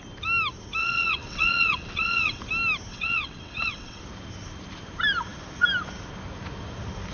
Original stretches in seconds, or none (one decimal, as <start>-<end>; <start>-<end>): 0.0-0.8; 2.4-2.9; 4.0-7.1